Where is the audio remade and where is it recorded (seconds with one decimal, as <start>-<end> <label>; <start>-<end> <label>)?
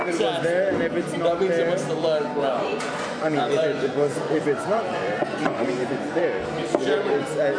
0.0-2.7 recorded; 2.7-6.2 remade; 6.2-7.6 recorded